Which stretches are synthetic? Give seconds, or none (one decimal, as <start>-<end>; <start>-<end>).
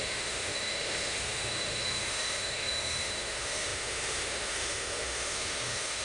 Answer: 0.0-6.0